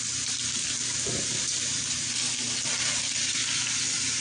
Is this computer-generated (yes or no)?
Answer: no